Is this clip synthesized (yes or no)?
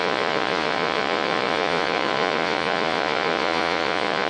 yes